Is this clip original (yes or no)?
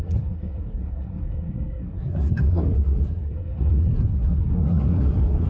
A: no